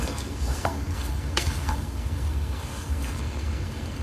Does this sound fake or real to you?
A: fake